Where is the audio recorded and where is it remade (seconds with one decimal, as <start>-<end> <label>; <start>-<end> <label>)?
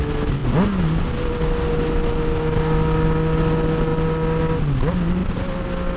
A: 0.0-6.0 recorded